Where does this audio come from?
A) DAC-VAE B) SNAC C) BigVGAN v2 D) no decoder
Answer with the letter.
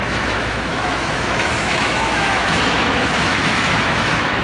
A